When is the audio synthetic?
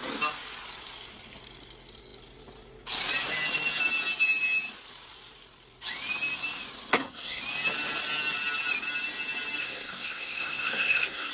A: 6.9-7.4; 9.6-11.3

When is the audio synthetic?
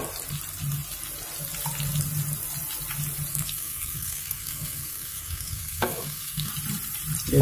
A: 3.3-6.5